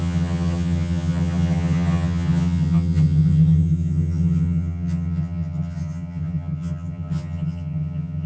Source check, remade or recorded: remade